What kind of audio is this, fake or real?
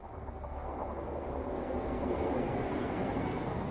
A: fake